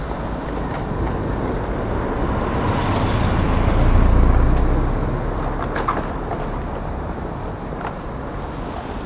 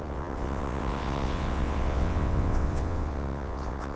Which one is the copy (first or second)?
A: second